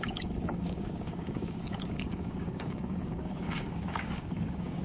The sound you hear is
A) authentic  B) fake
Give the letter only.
B